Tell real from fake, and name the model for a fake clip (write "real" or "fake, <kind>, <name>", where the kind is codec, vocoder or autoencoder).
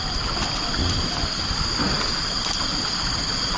real